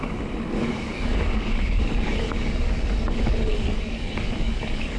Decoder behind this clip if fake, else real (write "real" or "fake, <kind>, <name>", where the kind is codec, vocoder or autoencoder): fake, codec, DAC